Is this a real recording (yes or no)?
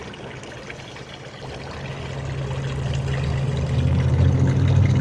yes